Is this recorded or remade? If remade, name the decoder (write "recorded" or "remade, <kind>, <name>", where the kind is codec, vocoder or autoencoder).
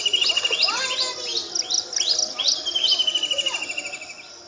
recorded